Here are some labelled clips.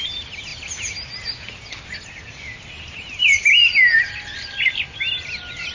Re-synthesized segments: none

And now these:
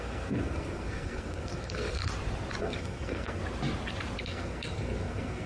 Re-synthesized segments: 0.0-2.0; 2.6-3.4; 4.2-5.5